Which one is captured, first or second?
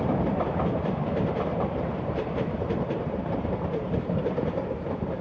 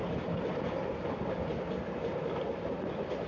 second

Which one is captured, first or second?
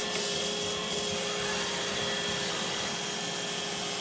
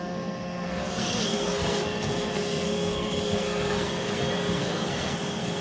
first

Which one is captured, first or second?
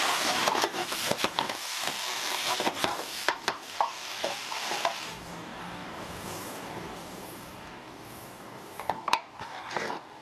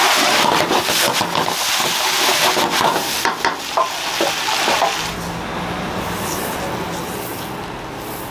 second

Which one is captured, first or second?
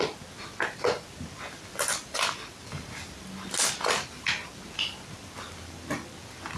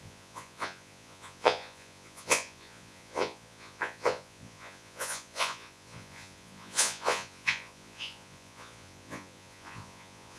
first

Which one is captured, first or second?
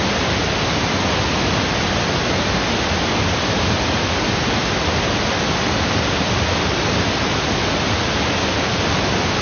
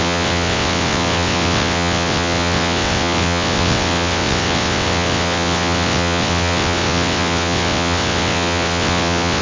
first